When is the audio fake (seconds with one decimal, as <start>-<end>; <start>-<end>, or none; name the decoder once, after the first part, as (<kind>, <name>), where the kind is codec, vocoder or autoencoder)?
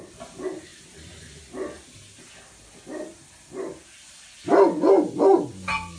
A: none